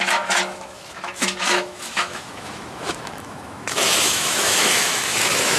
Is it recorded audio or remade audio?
remade